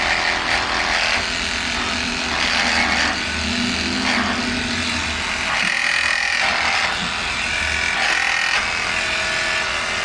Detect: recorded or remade recorded